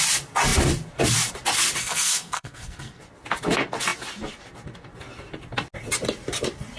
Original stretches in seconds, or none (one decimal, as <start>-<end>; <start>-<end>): 0.0-1.8; 3.0-6.8